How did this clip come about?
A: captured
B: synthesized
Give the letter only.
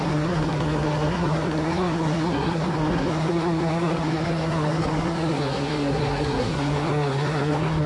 B